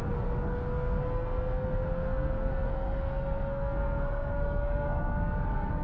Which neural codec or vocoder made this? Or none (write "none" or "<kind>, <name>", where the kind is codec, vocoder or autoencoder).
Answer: codec, SNAC